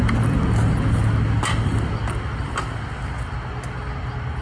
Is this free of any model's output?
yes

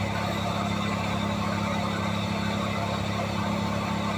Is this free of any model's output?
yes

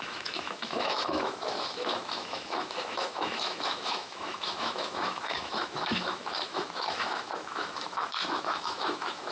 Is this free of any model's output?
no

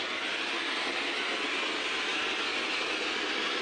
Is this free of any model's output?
yes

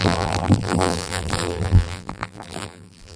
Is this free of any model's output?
no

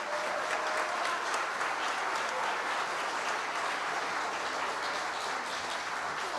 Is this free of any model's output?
yes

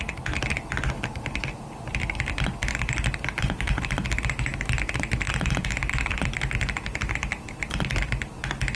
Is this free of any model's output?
yes